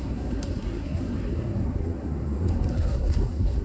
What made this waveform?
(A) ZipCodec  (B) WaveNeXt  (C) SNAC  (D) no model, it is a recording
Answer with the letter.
C